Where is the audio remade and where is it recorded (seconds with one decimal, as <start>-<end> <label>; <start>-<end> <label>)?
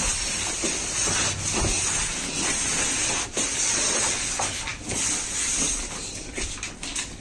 0.0-7.2 recorded